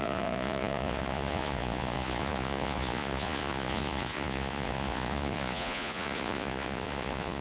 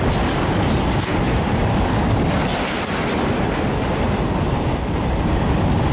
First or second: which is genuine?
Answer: second